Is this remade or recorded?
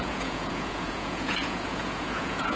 remade